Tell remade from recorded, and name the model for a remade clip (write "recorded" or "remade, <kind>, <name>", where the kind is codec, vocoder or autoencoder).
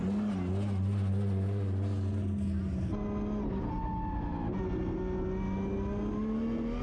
recorded